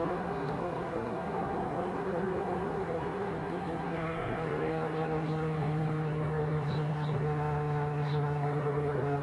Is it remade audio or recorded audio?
remade